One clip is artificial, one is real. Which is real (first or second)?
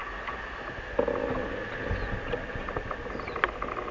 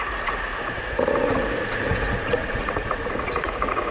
first